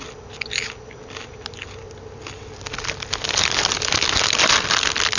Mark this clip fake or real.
real